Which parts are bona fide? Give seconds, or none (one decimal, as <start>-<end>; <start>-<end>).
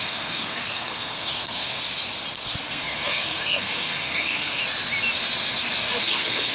1.8-2.7; 4.6-6.0